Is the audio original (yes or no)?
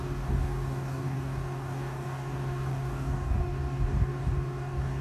no